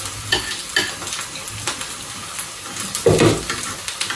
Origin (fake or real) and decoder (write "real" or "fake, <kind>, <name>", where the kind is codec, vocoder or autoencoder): real